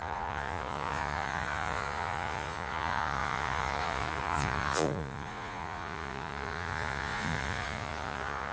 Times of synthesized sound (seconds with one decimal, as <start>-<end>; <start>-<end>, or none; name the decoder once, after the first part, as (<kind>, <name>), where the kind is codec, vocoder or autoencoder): 0.0-8.5 (vocoder, Vocos)